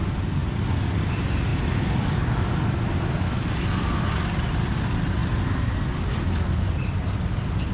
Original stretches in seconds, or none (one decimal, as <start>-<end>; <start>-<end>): 0.0-7.7